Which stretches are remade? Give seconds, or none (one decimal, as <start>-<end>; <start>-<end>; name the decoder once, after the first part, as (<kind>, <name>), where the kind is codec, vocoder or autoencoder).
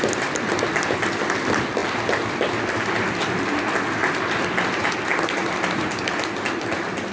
none